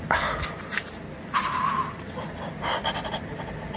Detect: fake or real real